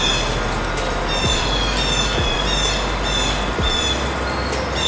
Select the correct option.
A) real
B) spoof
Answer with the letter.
A